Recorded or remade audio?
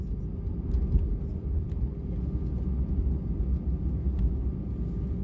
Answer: recorded